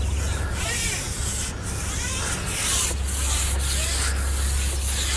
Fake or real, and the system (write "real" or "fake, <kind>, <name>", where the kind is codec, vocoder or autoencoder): real